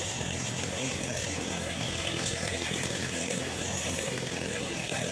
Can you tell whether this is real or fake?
fake